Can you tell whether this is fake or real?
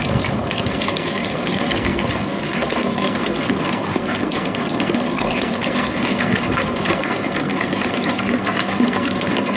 fake